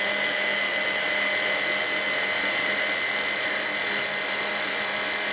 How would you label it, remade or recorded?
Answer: recorded